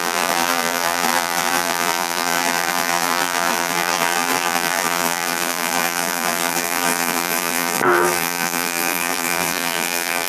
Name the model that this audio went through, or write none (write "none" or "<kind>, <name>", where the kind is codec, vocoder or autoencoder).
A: vocoder, BigVGAN v2